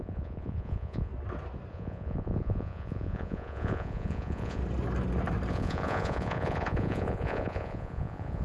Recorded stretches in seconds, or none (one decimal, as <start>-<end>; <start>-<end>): 1.1-1.7; 4.6-5.5